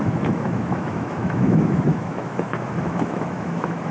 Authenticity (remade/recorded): remade